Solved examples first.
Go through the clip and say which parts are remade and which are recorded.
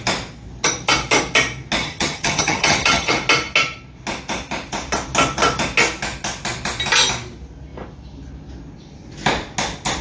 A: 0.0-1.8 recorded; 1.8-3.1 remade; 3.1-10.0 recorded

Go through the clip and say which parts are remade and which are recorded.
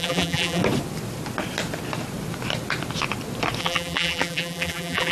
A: 0.0-0.6 remade; 0.6-3.6 recorded; 3.6-5.1 remade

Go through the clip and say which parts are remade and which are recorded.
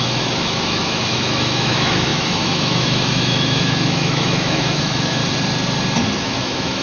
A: 0.0-5.2 remade; 5.2-6.2 recorded; 6.2-6.8 remade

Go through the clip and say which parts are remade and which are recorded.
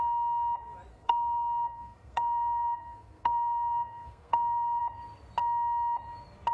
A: 0.0-0.9 recorded; 0.9-4.8 remade; 4.8-6.5 recorded